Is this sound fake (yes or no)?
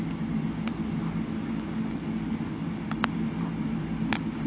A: no